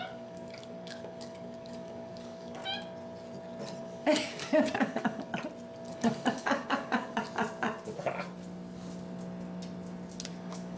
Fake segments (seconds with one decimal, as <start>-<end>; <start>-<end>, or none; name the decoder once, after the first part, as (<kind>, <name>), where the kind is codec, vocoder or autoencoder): 0.0-2.6 (codec, DAC); 3.8-5.3; 5.9-7.2; 10.3-10.8